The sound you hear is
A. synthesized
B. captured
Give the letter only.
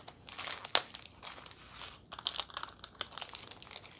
B